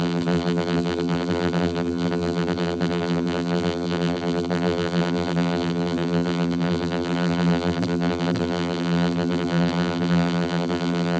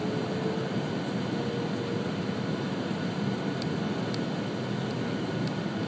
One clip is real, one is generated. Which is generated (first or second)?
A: first